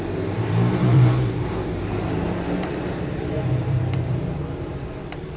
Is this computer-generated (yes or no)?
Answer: yes